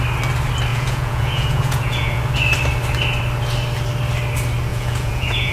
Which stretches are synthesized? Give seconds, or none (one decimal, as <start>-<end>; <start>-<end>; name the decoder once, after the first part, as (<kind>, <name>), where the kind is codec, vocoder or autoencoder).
0.7-2.2 (vocoder, Vocos); 4.7-5.5